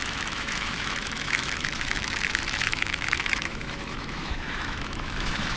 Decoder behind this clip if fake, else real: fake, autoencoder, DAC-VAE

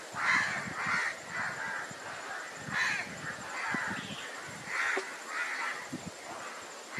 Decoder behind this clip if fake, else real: real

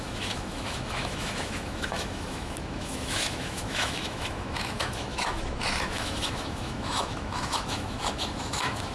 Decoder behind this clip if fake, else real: fake, autoencoder, DAC-VAE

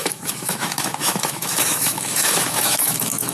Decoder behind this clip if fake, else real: fake, autoencoder, DAC-VAE